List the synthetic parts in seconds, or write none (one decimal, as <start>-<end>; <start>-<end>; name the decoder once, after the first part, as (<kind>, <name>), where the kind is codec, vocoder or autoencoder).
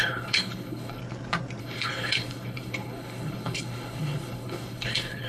0.0-1.0 (codec, HILCodec); 1.6-5.3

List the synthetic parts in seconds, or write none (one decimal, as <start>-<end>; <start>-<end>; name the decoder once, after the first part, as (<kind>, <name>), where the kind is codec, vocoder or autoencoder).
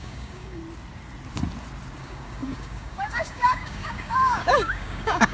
0.0-0.6 (codec, DAC); 2.0-5.3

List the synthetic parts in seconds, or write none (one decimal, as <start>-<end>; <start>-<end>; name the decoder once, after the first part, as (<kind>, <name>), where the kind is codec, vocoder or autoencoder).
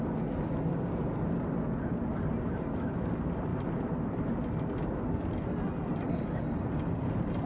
none